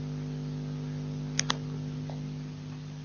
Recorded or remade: recorded